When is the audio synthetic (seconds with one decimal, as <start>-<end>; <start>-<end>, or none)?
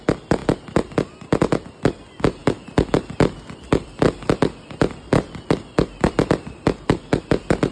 2.4-7.0